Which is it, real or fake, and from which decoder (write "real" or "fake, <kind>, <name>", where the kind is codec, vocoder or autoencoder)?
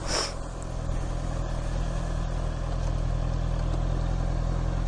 real